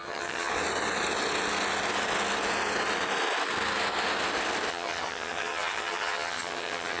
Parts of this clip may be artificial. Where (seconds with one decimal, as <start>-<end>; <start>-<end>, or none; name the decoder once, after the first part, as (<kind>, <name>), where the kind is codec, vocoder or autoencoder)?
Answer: 0.0-0.5 (vocoder, HiFi-GAN); 4.7-7.0